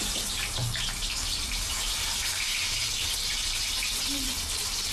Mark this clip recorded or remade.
remade